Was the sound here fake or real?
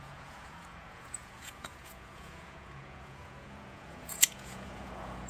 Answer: fake